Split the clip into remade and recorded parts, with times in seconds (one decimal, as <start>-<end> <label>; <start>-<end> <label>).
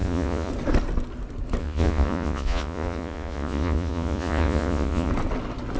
0.0-0.5 remade; 0.5-1.6 recorded; 1.6-5.1 remade; 5.1-5.8 recorded